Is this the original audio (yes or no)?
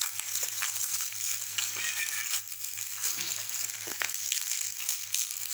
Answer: no